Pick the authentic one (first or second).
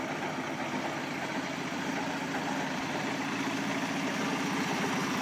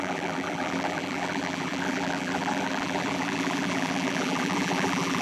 first